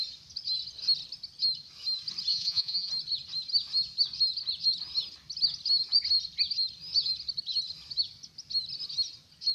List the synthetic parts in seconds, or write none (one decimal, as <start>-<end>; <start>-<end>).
2.3-2.9